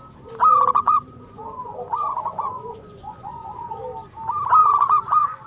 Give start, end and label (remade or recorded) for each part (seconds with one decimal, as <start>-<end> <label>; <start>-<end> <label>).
0.0-0.5 recorded; 0.5-3.8 remade; 3.8-4.6 recorded; 4.6-5.5 remade